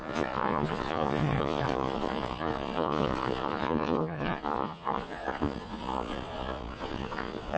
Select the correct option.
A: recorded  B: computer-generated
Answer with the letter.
B